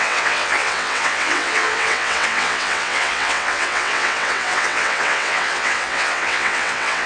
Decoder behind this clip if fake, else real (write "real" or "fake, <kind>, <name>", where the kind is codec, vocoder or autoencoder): fake, vocoder, WaveNeXt